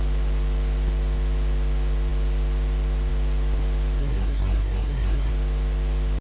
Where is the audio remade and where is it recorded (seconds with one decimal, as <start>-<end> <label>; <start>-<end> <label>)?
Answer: 0.0-4.0 recorded; 4.0-5.3 remade; 5.3-6.2 recorded